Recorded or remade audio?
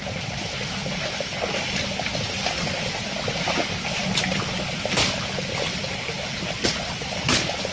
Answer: recorded